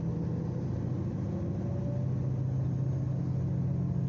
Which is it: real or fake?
real